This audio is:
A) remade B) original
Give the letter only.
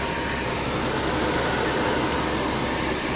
B